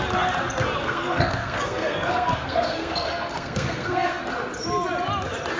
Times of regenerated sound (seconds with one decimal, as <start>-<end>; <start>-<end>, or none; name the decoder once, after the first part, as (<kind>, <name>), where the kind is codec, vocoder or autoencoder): 0.8-4.2 (codec, SNAC)